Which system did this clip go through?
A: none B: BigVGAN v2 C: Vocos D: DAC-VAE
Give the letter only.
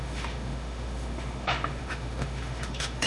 D